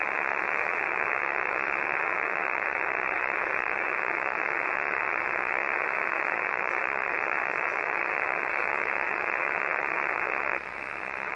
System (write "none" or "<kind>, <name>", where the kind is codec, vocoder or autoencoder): vocoder, WaveNeXt